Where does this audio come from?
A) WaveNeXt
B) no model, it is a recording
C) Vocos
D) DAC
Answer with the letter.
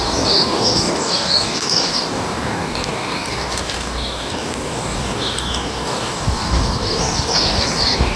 D